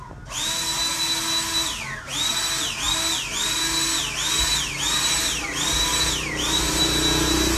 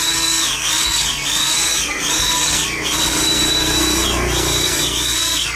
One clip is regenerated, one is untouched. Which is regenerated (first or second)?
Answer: second